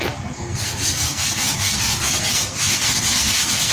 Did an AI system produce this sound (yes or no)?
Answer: yes